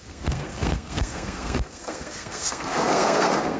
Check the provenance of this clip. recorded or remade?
remade